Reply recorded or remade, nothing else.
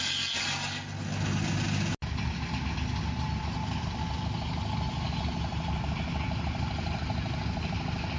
recorded